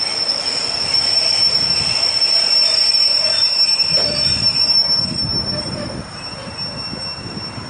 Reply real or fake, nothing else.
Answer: real